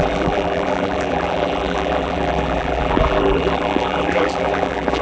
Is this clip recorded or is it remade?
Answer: remade